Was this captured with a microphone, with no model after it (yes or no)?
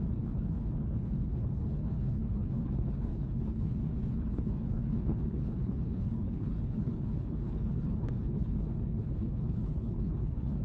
no